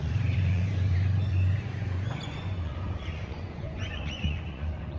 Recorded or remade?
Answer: remade